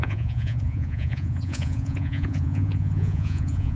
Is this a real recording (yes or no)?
no